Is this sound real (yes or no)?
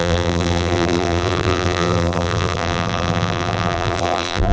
no